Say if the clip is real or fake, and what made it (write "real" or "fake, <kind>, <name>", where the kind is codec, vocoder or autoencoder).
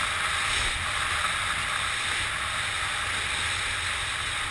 real